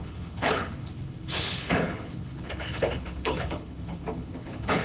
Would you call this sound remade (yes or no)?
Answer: yes